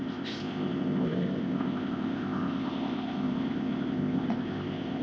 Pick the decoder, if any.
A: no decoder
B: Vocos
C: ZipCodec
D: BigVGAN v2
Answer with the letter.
C